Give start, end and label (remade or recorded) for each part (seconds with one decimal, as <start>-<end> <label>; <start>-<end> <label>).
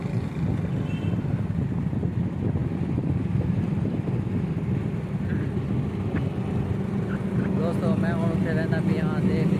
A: 0.0-2.6 recorded; 2.6-4.5 remade; 4.5-9.6 recorded